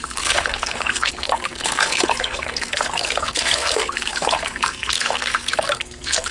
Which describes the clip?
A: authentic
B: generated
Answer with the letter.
B